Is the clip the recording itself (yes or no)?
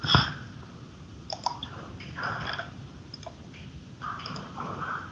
no